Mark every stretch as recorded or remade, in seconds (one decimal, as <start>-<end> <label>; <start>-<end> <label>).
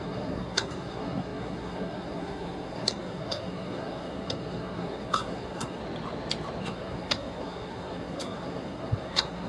0.0-5.8 remade; 5.8-6.6 recorded; 6.6-9.5 remade